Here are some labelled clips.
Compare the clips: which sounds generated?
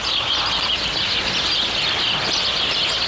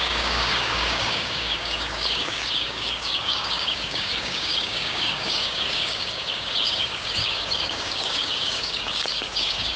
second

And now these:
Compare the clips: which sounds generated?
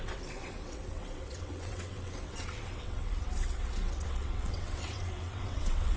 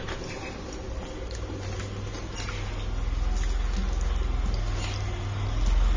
first